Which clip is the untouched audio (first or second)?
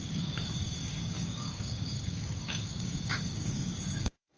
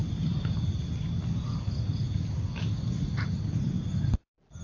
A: second